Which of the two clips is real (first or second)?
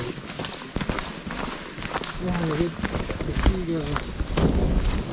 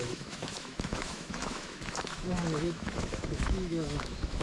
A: first